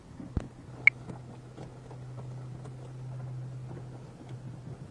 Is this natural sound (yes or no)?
yes